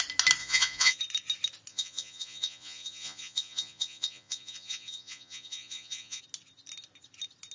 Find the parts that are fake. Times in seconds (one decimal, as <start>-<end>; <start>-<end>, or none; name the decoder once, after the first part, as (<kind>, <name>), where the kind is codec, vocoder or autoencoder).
0.4-1.0 (vocoder, Vocos); 1.7-6.2